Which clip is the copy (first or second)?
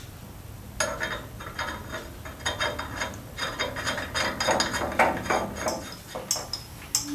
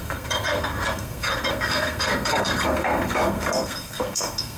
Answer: second